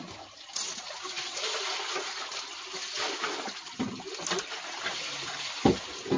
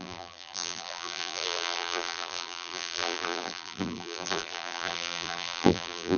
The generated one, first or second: second